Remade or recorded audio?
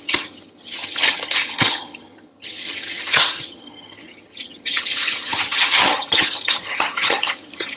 remade